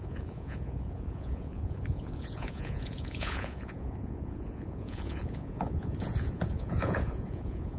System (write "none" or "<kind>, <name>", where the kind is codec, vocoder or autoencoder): vocoder, Vocos